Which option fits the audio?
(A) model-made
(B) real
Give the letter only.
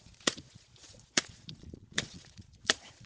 A